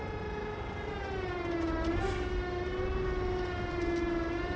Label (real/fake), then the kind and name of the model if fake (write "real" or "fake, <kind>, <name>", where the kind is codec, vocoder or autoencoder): real